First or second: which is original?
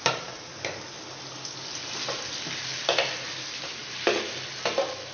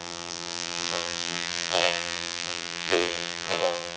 first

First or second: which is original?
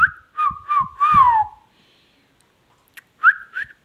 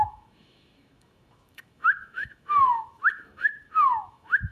first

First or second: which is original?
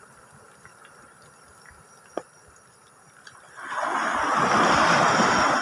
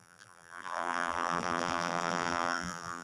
first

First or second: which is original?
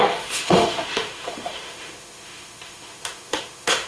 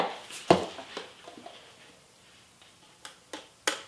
second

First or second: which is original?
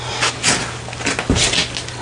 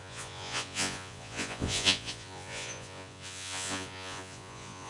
first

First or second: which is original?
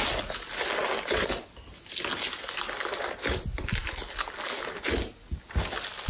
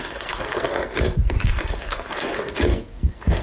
first